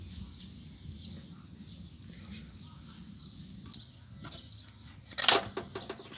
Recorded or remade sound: recorded